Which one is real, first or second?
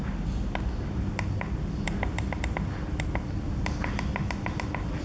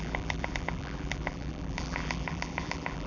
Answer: first